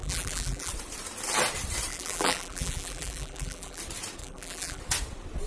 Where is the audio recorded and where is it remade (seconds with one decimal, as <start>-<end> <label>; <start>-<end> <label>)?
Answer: 0.0-0.7 remade; 0.7-1.9 recorded; 1.9-3.8 remade; 3.8-4.2 recorded; 4.2-4.8 remade; 4.8-5.5 recorded